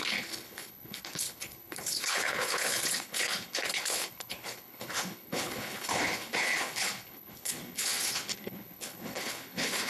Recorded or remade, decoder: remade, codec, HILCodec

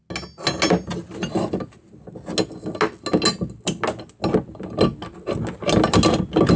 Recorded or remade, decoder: recorded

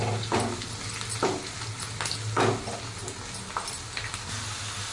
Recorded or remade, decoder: recorded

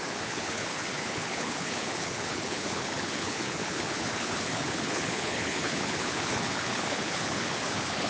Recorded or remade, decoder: remade, codec, HILCodec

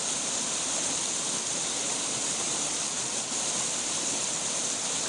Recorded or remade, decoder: recorded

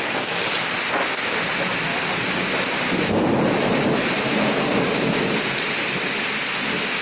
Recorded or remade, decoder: recorded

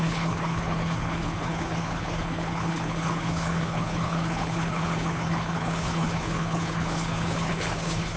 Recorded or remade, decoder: remade, codec, HILCodec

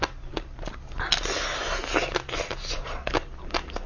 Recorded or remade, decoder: recorded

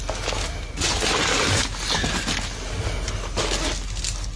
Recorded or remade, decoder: recorded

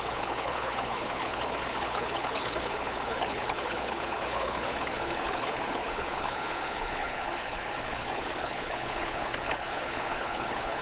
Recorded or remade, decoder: remade, codec, HILCodec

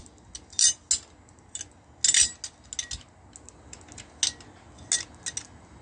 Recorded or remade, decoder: recorded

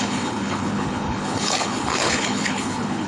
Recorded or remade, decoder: remade, codec, HILCodec